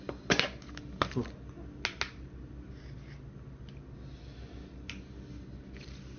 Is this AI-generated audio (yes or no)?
no